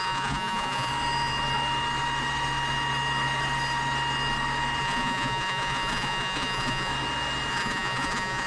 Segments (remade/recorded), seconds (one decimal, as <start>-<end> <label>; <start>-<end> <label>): 0.0-0.9 remade; 0.9-4.8 recorded; 4.8-6.9 remade; 6.9-7.5 recorded; 7.5-8.5 remade